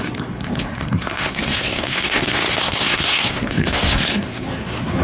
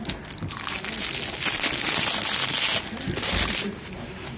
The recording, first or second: second